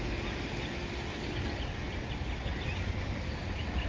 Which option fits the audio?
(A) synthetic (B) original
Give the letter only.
B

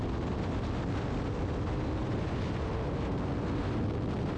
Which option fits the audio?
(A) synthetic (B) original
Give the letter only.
B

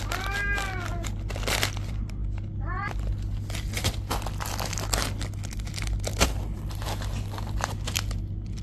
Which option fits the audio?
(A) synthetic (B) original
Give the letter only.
B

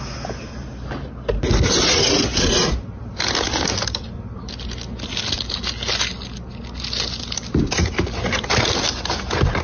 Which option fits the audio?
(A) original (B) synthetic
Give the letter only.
A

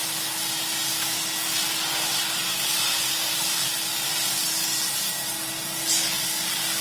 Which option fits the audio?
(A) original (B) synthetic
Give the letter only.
A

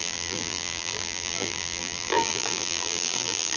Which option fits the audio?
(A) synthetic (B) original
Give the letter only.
A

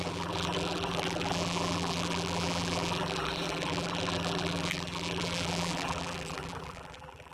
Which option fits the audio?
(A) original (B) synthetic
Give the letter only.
B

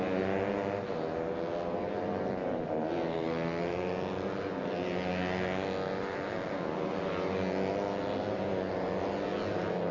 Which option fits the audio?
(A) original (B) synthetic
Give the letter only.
A